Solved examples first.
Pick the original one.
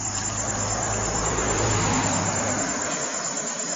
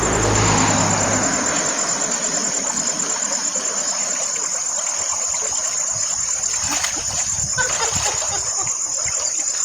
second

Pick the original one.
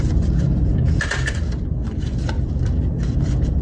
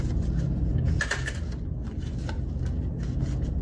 second